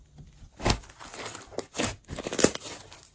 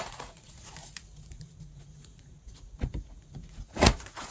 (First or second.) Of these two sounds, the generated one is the second